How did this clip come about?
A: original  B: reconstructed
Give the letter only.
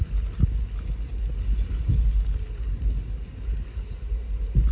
A